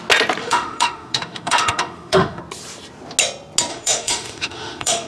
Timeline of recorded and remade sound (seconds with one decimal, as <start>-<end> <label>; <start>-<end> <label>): 0.0-0.4 recorded; 0.4-2.4 remade; 2.4-3.7 recorded; 3.7-5.1 remade